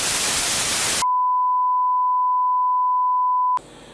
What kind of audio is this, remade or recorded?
recorded